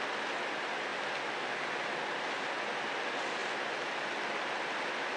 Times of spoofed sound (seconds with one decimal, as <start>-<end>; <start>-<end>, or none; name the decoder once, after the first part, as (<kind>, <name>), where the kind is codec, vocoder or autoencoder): none